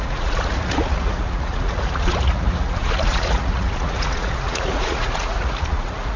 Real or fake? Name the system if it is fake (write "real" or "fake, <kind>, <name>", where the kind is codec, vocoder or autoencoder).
fake, vocoder, Vocos